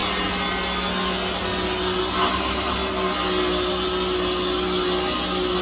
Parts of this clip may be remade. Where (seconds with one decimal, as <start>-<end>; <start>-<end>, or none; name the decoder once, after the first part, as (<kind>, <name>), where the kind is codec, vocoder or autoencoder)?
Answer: 2.0-2.8 (vocoder, BigVGAN v2)